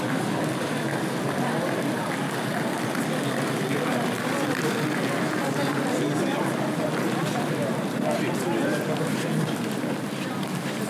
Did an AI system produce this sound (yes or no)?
no